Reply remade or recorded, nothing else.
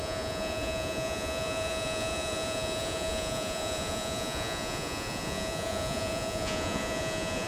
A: remade